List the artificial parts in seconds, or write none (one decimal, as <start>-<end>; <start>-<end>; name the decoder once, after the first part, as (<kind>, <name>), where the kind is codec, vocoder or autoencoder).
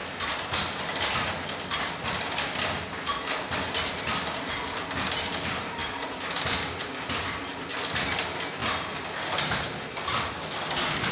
none